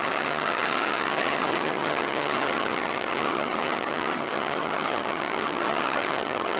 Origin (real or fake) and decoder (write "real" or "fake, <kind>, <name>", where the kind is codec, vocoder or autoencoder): fake, vocoder, HiFi-GAN